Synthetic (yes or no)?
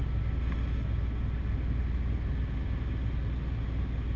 no